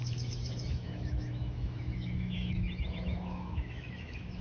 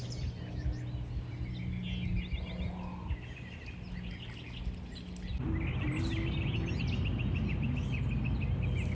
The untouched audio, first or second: second